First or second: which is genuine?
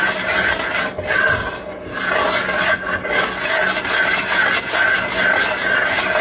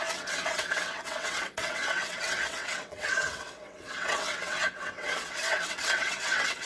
first